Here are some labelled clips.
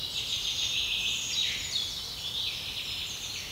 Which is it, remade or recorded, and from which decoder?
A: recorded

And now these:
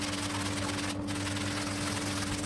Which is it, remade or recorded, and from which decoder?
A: recorded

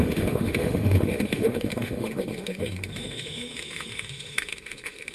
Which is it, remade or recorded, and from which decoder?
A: remade, autoencoder, DAC-VAE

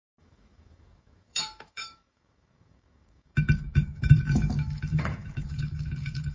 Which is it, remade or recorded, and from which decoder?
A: remade, autoencoder, DAC-VAE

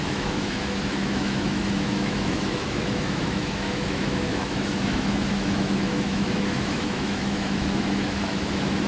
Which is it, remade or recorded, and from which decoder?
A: remade, autoencoder, DAC-VAE